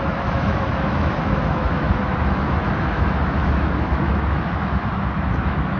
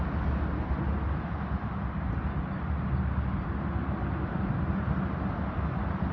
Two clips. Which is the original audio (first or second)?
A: second